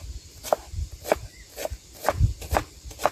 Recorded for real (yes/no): yes